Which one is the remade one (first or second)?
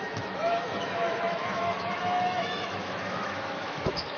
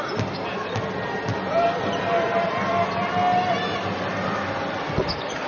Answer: first